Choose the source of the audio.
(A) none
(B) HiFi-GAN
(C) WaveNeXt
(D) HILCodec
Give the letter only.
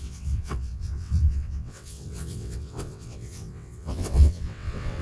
C